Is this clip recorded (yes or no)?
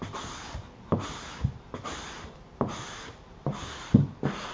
yes